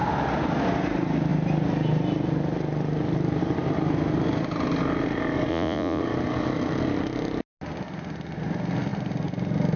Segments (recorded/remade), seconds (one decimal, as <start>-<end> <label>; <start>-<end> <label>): 0.0-5.5 recorded; 5.5-6.0 remade; 6.0-9.8 recorded